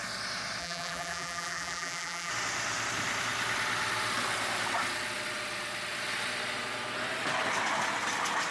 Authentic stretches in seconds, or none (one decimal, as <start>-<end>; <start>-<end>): 0.0-0.6; 2.3-8.5